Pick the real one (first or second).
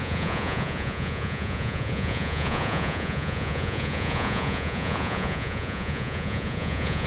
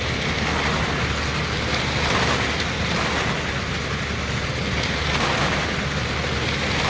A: second